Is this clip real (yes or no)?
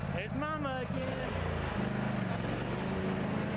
yes